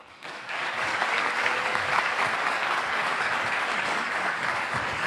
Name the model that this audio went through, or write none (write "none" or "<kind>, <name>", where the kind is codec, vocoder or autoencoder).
codec, DAC